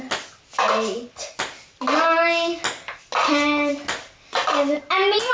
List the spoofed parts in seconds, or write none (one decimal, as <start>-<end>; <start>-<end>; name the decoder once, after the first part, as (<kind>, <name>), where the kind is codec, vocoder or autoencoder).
none

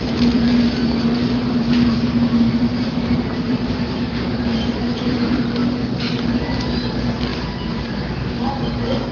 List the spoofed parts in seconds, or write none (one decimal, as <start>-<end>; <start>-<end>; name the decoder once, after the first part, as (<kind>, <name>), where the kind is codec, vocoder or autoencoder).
0.0-5.6 (vocoder, BigVGAN v2); 6.6-9.1

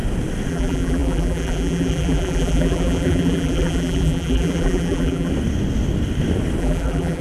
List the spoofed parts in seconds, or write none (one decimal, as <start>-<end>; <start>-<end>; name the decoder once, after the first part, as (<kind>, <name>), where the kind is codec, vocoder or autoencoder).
0.5-5.3 (vocoder, BigVGAN v2); 6.6-7.2

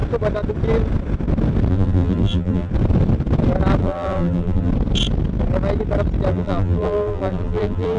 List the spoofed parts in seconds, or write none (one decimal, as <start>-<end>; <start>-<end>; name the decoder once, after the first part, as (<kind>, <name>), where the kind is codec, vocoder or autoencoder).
1.7-2.7 (vocoder, BigVGAN v2); 3.8-4.7; 6.3-8.0

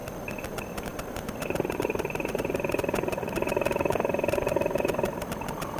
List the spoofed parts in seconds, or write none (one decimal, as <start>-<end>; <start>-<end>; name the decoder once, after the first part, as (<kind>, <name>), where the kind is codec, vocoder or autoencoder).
0.5-5.8 (vocoder, BigVGAN v2)

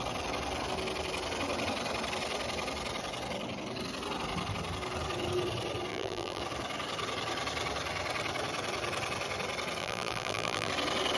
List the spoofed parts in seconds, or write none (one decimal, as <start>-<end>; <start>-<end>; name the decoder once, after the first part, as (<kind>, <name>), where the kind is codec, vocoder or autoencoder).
5.9-6.4 (vocoder, BigVGAN v2); 9.8-10.7

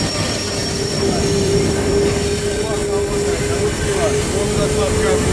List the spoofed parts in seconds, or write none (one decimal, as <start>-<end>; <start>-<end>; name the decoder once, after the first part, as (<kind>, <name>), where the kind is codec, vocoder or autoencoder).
0.6-1.9 (vocoder, BigVGAN v2)

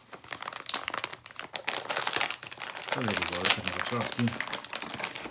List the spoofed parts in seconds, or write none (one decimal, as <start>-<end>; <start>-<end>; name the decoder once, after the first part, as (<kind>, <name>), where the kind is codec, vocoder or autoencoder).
1.1-3.6 (vocoder, BigVGAN v2)